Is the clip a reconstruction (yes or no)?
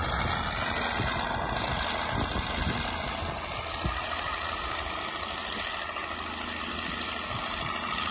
no